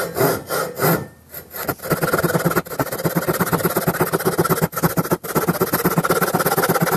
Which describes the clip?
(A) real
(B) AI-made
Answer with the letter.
A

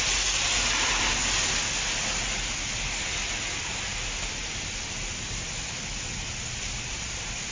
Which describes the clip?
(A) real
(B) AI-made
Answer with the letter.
A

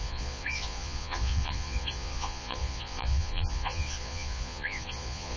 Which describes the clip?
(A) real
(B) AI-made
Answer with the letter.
B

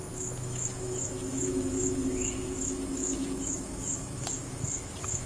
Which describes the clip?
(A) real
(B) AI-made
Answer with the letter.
B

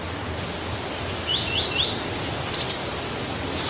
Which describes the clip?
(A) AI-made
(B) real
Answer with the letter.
B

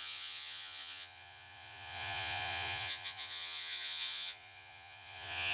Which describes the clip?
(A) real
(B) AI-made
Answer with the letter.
B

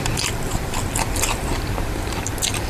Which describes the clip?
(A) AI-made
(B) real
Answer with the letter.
A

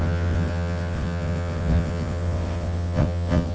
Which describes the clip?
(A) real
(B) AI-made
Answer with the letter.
B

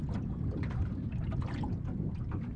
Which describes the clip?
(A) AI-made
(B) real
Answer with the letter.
B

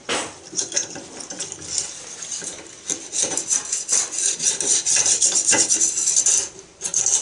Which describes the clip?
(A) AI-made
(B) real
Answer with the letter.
B